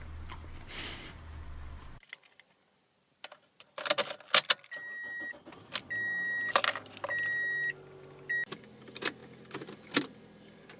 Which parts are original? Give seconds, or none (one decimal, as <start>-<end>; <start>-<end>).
0.0-10.8